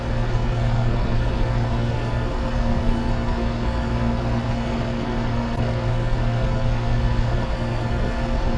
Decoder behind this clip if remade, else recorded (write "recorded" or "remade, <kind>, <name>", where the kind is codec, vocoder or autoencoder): remade, codec, SNAC